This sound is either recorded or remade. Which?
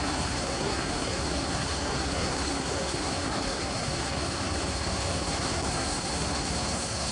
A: remade